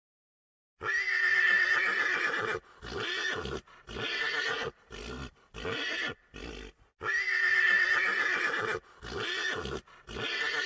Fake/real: real